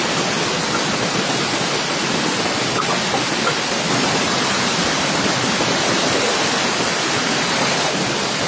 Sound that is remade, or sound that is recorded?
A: recorded